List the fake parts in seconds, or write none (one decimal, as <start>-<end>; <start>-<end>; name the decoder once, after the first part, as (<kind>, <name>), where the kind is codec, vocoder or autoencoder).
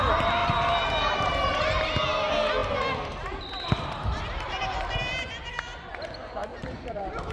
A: 0.4-2.0 (vocoder, BigVGAN v2); 6.5-7.3